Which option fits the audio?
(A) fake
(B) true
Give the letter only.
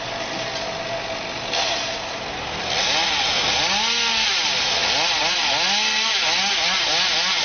B